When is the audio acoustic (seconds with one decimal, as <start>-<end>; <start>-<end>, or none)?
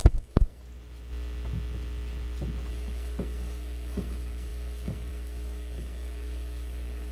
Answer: 0.6-2.7